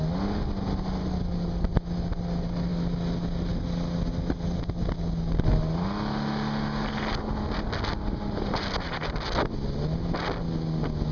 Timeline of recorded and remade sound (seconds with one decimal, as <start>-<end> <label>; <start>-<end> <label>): 0.0-11.1 recorded